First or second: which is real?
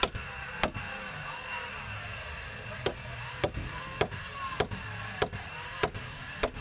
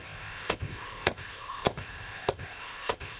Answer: first